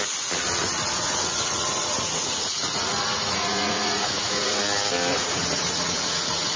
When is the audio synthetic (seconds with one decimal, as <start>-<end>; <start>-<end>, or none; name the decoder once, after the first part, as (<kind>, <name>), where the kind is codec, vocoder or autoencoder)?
0.6-4.6 (vocoder, Vocos); 5.1-6.6